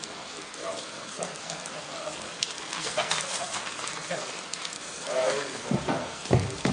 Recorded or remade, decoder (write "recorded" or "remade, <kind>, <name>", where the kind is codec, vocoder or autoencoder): remade, codec, SNAC